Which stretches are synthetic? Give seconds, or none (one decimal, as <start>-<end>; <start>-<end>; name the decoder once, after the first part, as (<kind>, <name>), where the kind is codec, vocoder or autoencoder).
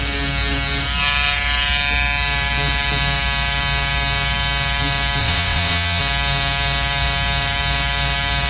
5.2-6.0 (vocoder, WaveNeXt)